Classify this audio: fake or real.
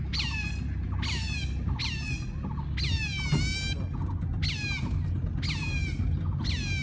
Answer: real